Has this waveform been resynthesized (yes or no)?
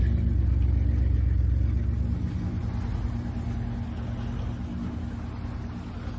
no